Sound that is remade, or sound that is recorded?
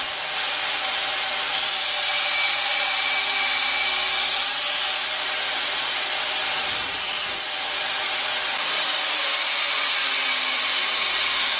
recorded